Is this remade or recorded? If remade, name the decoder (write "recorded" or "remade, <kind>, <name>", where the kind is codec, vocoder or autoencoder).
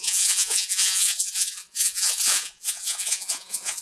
remade, vocoder, Vocos